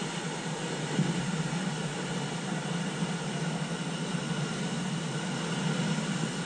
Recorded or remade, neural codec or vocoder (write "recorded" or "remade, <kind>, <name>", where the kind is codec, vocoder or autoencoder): recorded